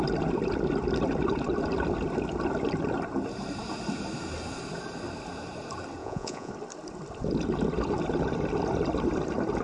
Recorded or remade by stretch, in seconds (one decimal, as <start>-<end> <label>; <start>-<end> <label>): 0.0-6.0 recorded; 6.0-6.5 remade; 6.5-9.6 recorded